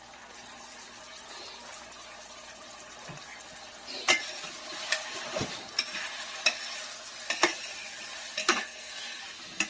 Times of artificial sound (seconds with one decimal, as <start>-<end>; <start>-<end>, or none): 8.4-9.2